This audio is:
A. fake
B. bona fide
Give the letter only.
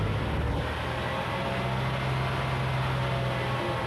B